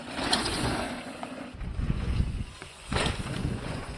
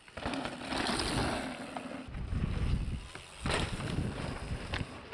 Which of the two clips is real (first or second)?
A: second